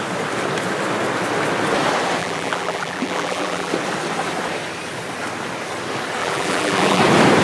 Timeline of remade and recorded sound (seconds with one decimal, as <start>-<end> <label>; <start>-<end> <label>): 0.0-2.2 recorded; 2.2-3.7 remade; 3.7-6.2 recorded; 6.2-7.0 remade; 7.0-7.4 recorded